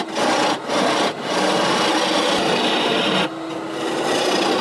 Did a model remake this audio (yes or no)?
no